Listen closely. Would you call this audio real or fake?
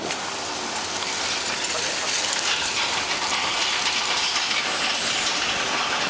real